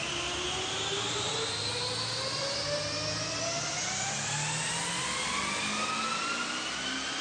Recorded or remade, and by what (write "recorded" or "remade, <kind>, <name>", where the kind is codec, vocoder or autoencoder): recorded